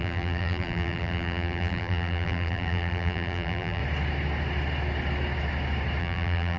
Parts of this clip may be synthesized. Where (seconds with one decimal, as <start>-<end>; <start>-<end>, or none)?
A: 0.0-3.8; 6.0-6.6